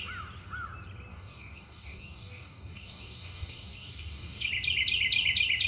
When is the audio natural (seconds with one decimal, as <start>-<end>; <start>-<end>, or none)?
0.0-1.1; 4.5-5.7